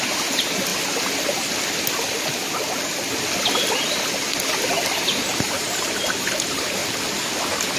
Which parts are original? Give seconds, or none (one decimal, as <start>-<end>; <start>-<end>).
0.7-5.4; 6.8-7.8